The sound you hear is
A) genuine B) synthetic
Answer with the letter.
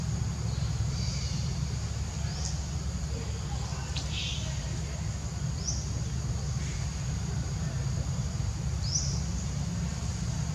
A